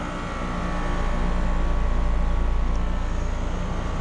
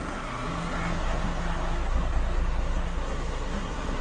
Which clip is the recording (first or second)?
first